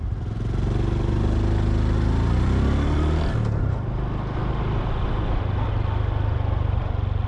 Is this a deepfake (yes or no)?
no